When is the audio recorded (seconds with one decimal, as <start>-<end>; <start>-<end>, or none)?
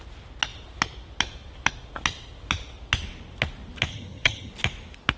0.0-3.9; 4.5-5.2